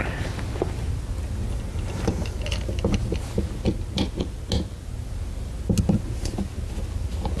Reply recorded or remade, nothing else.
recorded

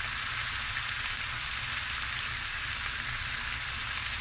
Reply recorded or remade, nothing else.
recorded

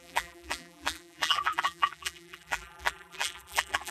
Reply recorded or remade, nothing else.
remade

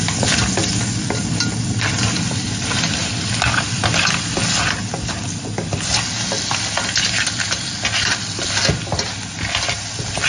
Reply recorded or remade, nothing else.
recorded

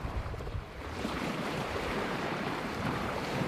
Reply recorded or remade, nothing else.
remade